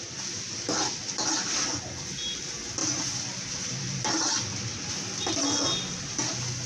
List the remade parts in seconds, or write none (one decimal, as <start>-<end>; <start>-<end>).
none